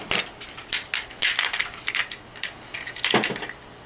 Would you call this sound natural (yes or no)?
yes